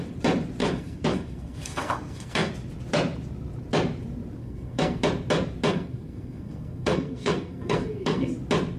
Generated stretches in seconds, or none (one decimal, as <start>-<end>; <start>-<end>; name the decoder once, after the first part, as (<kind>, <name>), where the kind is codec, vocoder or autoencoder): 0.6-2.5 (codec, SNAC); 4.4-5.0; 5.7-8.3